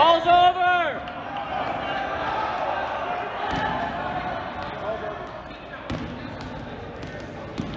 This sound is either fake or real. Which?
real